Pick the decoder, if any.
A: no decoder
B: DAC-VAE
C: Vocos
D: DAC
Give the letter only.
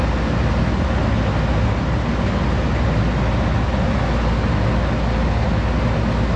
A